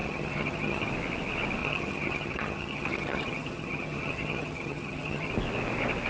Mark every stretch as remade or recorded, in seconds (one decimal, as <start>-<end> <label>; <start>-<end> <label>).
0.0-0.9 remade; 0.9-1.6 recorded; 1.6-5.3 remade; 5.3-6.1 recorded